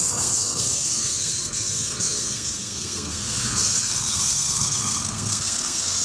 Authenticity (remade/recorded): remade